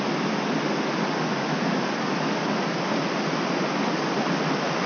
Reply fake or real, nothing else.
real